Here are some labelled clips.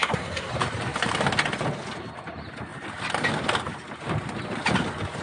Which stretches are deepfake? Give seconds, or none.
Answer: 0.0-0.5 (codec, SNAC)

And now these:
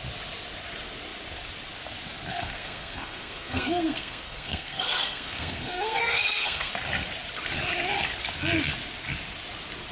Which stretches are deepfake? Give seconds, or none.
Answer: 2.3-6.7 (codec, SNAC)

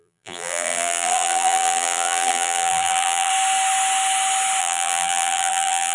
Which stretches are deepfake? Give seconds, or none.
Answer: 0.0-3.3 (vocoder, BigVGAN v2); 4.6-5.9

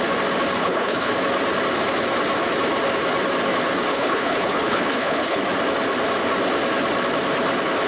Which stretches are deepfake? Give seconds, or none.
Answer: 0.6-1.1 (codec, HILCodec); 3.9-5.4

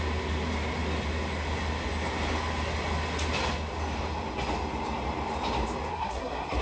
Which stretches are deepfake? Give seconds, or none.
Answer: 5.9-6.6 (codec, SNAC)